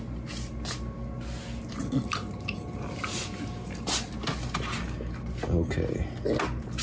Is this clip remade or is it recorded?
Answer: recorded